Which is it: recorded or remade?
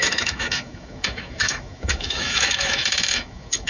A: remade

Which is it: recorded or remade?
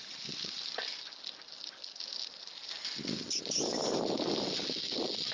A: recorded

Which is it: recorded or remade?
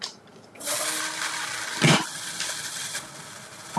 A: recorded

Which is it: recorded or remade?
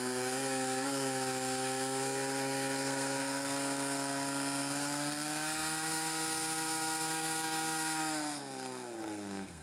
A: remade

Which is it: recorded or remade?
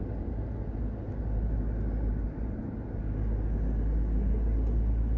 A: recorded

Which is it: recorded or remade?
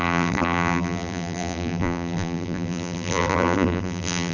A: remade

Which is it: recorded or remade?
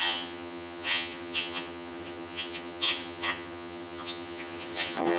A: remade